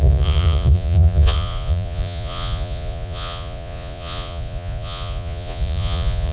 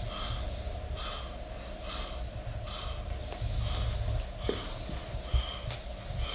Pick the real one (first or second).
second